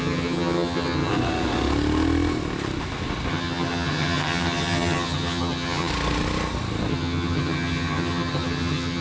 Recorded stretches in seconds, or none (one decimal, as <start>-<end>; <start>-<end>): 1.1-3.3; 5.9-6.9

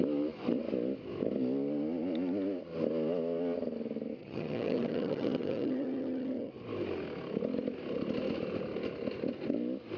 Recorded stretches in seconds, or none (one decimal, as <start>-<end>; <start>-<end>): 0.0-4.2; 6.5-10.0

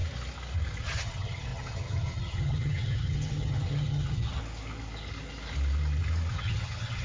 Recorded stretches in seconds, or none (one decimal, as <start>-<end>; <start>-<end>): 0.0-0.8; 4.4-6.3